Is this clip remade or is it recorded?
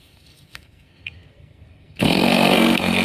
remade